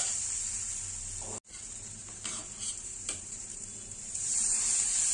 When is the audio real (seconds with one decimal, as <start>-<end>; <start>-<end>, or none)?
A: 0.0-1.5; 4.6-5.1